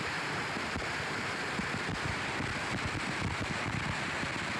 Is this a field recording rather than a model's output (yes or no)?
yes